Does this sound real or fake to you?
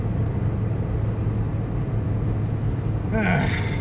real